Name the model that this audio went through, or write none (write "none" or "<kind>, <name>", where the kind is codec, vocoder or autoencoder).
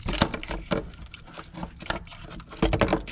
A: none